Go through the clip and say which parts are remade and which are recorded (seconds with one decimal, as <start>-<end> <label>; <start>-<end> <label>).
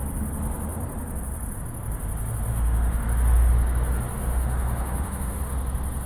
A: 0.0-2.5 recorded; 2.5-3.0 remade; 3.0-4.2 recorded; 4.2-5.4 remade; 5.4-6.1 recorded